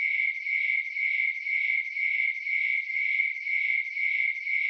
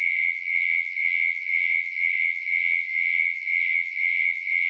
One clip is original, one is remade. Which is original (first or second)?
first